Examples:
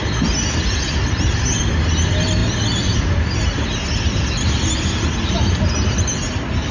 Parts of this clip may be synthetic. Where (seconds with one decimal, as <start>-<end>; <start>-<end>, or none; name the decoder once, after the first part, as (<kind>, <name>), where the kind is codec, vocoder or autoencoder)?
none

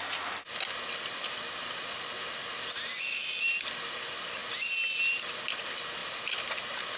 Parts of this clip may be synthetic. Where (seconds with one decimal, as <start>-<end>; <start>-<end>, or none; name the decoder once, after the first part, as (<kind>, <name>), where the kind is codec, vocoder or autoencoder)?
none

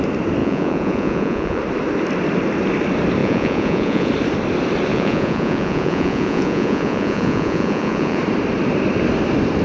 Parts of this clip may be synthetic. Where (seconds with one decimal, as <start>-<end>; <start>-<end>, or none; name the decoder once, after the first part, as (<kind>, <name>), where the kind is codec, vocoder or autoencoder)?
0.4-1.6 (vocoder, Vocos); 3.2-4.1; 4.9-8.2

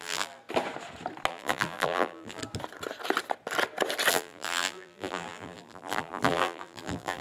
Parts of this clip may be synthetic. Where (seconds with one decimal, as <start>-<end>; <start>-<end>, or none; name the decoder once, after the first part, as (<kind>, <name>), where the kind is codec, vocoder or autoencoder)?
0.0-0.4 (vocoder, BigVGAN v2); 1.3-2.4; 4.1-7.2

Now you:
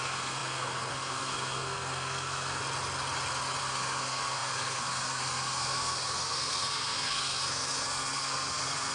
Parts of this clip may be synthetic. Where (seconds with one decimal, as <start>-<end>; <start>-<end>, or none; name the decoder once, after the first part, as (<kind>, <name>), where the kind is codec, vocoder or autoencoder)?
0.0-2.6 (codec, SNAC); 3.6-8.9

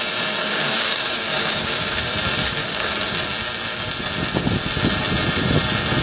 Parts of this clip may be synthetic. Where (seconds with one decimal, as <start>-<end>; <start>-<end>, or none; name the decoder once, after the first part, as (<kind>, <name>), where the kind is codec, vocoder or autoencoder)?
0.4-2.0 (codec, DAC); 2.4-3.0